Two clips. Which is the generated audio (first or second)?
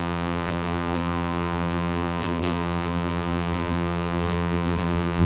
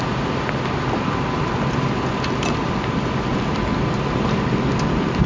first